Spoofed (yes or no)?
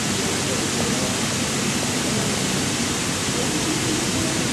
no